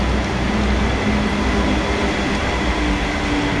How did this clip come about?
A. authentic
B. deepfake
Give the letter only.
A